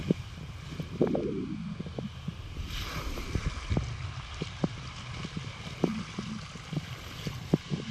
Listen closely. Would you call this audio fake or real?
real